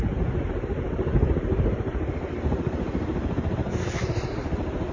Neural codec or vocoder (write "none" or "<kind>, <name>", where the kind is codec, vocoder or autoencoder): none